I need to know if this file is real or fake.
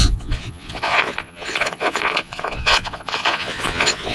fake